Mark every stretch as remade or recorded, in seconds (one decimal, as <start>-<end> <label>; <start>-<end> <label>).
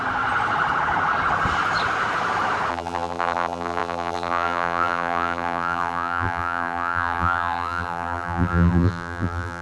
0.0-2.7 recorded; 2.7-9.6 remade